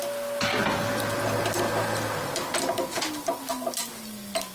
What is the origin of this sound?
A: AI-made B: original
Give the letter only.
B